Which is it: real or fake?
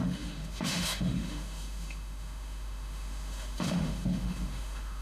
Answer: fake